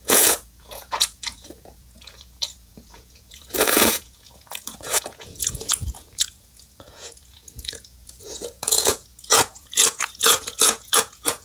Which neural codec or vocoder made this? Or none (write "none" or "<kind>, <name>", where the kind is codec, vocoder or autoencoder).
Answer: vocoder, Vocos